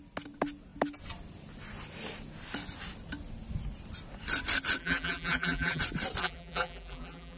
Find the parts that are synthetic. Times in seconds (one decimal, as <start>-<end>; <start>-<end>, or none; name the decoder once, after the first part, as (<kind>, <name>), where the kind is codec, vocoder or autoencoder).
4.8-5.8 (vocoder, BigVGAN v2); 6.2-7.4